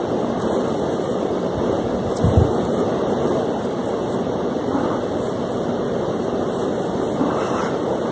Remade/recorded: recorded